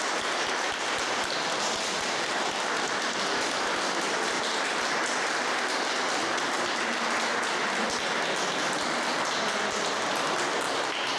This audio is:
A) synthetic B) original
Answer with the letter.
B